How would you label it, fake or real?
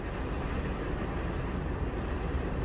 real